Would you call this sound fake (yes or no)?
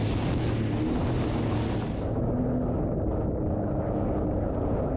no